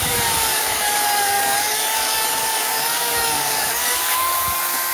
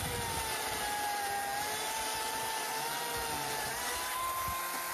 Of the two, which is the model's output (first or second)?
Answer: first